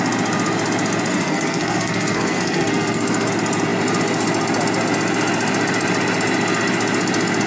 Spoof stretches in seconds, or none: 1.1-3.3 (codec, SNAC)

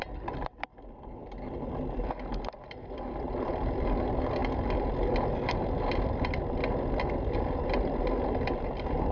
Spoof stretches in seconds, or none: 0.0-1.2 (vocoder, BigVGAN v2); 2.4-4.4; 7.4-9.1

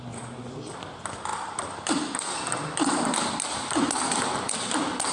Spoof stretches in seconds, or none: none

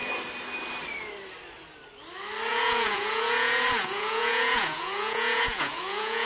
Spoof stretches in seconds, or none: 2.5-6.3 (vocoder, Vocos)

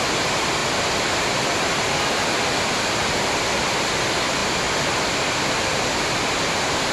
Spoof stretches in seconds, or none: 0.6-3.7 (vocoder, BigVGAN v2)